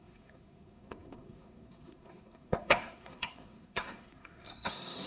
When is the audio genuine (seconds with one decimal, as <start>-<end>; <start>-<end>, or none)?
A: none